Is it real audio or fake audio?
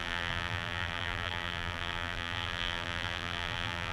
fake